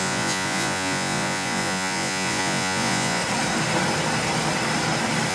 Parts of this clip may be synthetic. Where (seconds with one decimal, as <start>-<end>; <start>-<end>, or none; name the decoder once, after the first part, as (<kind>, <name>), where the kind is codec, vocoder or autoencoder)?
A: 0.0-3.2 (vocoder, Vocos)